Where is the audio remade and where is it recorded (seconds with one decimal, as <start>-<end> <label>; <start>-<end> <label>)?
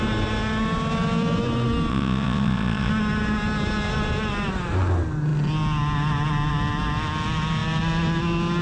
0.0-1.9 recorded; 1.9-2.9 remade; 2.9-8.6 recorded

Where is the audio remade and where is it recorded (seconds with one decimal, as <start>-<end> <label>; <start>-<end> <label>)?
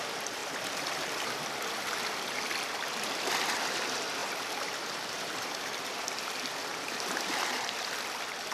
0.0-4.2 recorded; 4.2-6.2 remade; 6.2-6.7 recorded; 6.7-7.7 remade; 7.7-8.5 recorded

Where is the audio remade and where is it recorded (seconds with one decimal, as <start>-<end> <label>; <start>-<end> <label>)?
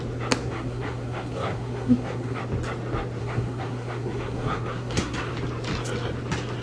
0.0-0.4 recorded; 0.4-2.4 remade; 2.4-3.2 recorded; 3.2-5.3 remade; 5.3-6.6 recorded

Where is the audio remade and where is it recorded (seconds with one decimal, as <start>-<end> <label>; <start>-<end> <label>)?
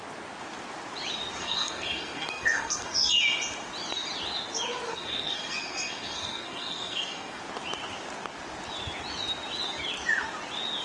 0.0-1.4 recorded; 1.4-3.2 remade; 3.2-4.9 recorded; 4.9-7.4 remade; 7.4-10.8 recorded